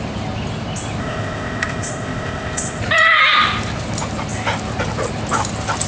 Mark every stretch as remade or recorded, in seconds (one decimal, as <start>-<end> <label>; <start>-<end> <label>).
0.0-1.0 recorded; 1.0-2.8 remade; 2.8-5.9 recorded

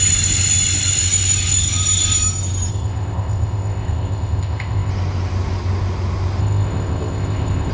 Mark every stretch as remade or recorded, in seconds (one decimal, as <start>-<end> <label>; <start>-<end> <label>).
0.0-2.7 recorded; 2.7-4.9 remade; 4.9-6.4 recorded; 6.4-7.7 remade

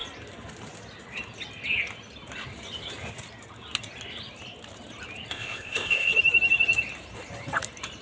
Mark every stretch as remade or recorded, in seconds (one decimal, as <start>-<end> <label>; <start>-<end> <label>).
0.0-5.3 recorded; 5.3-6.1 remade; 6.1-8.0 recorded

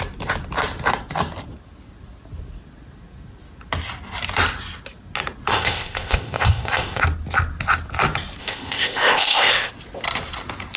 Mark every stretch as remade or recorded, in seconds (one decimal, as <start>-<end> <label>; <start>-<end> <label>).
0.0-5.5 recorded; 5.5-7.0 remade; 7.0-8.4 recorded; 8.4-9.7 remade; 9.7-10.8 recorded

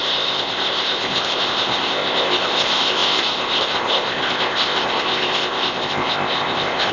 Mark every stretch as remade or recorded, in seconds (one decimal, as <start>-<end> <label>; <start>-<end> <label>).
0.0-6.9 remade

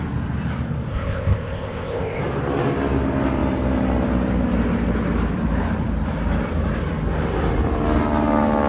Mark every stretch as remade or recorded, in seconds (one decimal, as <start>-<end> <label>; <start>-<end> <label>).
0.0-0.9 recorded; 0.9-2.2 remade; 2.2-8.7 recorded

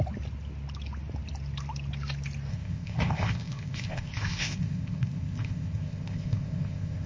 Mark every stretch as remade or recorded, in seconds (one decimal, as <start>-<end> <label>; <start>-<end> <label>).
0.0-2.5 recorded; 2.5-7.1 remade